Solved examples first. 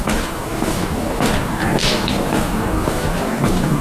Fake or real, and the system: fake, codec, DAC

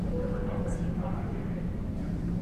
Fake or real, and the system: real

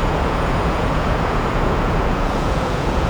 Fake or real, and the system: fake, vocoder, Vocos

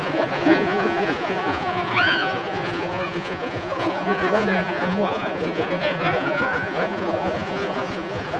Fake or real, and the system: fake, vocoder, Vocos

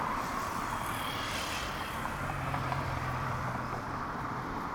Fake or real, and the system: fake, vocoder, BigVGAN v2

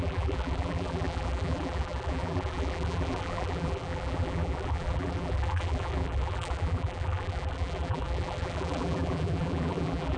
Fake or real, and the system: fake, vocoder, BigVGAN v2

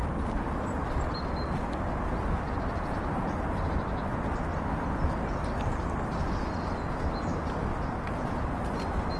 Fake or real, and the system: real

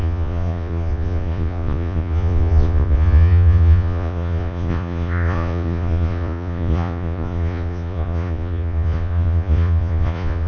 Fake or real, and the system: fake, vocoder, Vocos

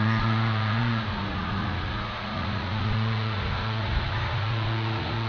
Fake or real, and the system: fake, vocoder, Vocos